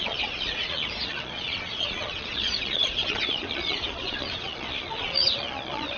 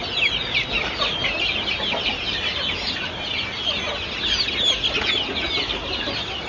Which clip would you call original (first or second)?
second